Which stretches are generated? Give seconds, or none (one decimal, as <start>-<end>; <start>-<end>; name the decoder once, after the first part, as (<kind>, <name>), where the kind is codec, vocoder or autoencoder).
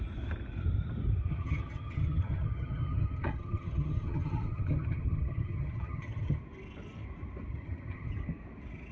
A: 1.3-6.4 (vocoder, HiFi-GAN); 7.5-8.1